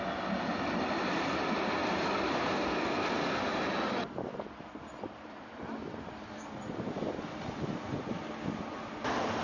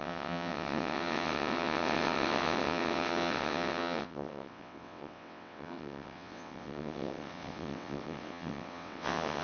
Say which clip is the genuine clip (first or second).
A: first